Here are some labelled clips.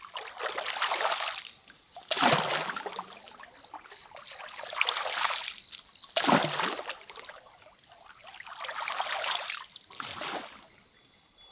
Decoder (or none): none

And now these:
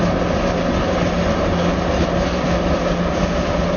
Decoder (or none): none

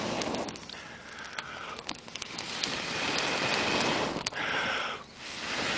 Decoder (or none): none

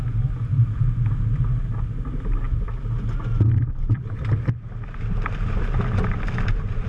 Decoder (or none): none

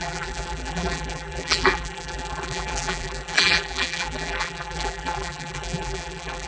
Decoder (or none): vocoder, BigVGAN v2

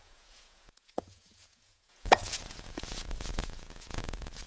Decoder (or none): vocoder, Vocos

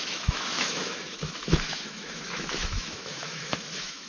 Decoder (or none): autoencoder, DAC-VAE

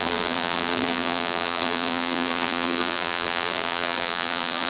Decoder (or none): vocoder, BigVGAN v2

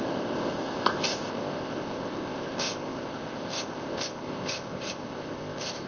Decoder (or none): codec, ZipCodec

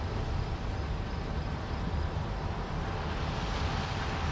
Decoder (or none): none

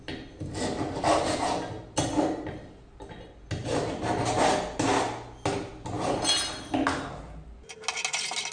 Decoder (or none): none